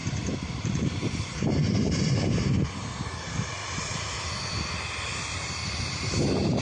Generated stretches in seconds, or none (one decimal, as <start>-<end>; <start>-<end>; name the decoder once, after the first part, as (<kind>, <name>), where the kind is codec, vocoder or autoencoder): 0.0-3.6 (vocoder, BigVGAN v2); 5.2-6.6